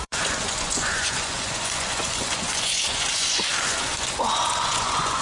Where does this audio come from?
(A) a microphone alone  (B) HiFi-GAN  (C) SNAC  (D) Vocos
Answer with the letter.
D